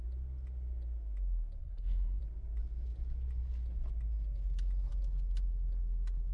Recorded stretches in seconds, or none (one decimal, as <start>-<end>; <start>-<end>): 0.0-1.6; 2.2-6.3